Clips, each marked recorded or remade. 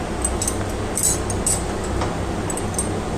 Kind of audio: recorded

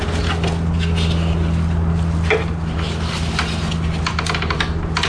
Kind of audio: recorded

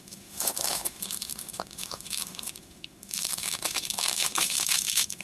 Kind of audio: remade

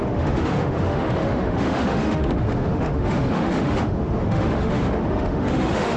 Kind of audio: remade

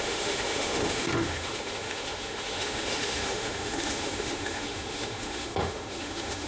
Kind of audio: remade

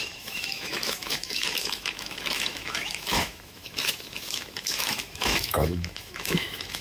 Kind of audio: remade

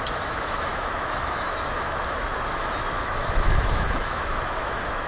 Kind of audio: remade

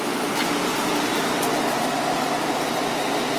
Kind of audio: recorded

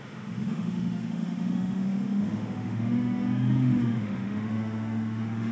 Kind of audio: remade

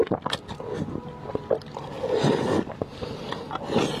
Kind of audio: recorded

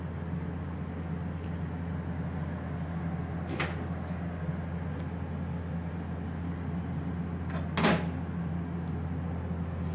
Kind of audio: recorded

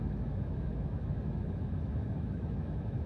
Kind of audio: remade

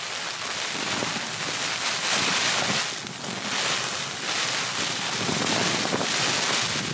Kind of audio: recorded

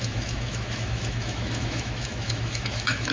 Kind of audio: remade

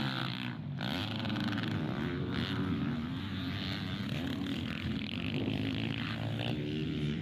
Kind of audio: recorded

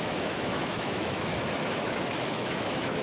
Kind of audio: remade